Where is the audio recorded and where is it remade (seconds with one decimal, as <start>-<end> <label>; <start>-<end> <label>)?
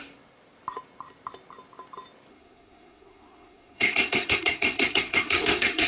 0.0-2.3 recorded; 2.3-5.9 remade